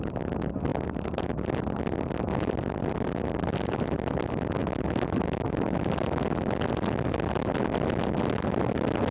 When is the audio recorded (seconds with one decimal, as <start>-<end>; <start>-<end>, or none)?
0.0-9.1